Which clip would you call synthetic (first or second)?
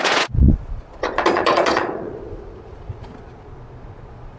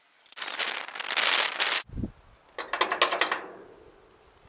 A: first